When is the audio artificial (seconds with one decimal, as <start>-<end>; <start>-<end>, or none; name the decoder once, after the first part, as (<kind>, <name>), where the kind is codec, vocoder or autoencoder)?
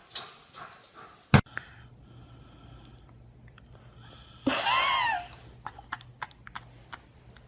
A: none